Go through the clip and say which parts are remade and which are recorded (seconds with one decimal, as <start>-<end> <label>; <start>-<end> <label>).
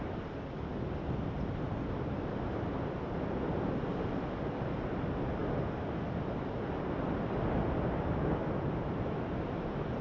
0.0-10.0 recorded